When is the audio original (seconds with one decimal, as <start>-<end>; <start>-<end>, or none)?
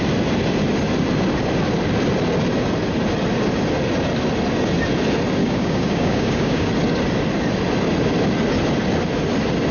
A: 0.0-5.4; 6.7-9.7